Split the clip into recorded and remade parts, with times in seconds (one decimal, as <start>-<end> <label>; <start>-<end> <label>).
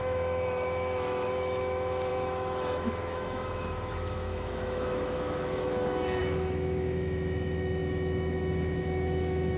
0.0-9.6 remade